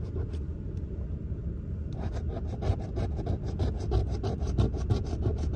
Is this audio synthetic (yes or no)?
no